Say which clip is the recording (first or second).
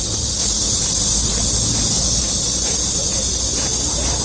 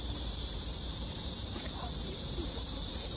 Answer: first